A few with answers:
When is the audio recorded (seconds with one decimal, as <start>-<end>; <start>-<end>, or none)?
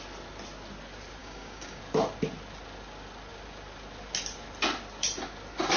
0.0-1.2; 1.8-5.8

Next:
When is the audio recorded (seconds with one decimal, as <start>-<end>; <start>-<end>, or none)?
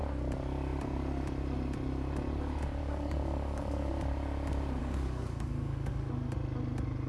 0.0-2.8; 3.9-4.8; 6.1-7.1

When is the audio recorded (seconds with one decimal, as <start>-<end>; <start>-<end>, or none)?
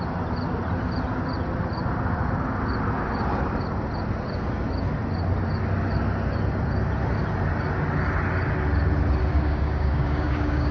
0.0-9.3